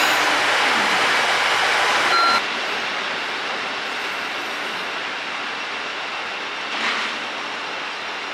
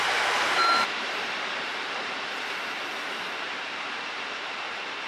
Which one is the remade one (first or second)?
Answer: second